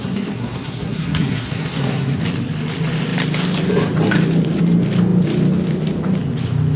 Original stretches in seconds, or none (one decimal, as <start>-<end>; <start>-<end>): 2.2-6.8